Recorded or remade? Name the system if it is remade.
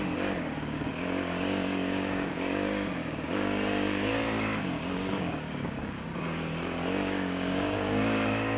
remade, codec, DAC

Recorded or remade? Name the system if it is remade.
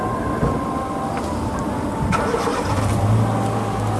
recorded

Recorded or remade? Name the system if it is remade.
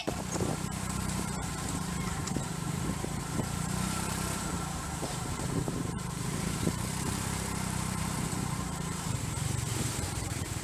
remade, vocoder, BigVGAN v2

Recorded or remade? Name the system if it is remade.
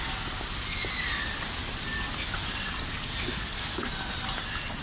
recorded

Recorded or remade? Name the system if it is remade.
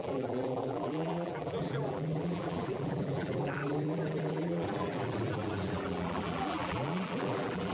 remade, vocoder, BigVGAN v2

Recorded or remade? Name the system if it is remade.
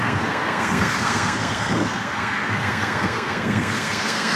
remade, codec, SNAC